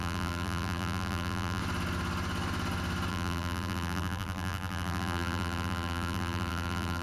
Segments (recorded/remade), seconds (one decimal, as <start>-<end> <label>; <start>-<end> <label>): 0.0-1.6 remade; 1.6-3.1 recorded; 3.1-7.0 remade